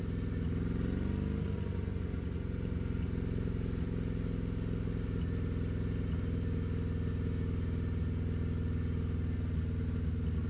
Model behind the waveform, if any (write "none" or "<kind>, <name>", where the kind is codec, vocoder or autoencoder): none